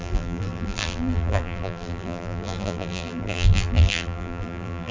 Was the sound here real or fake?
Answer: fake